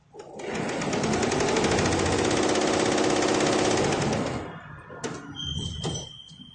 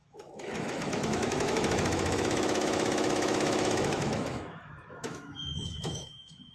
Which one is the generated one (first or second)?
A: second